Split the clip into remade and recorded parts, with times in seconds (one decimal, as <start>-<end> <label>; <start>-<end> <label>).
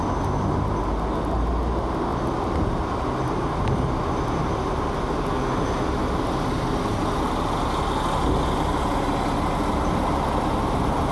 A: 0.0-11.1 recorded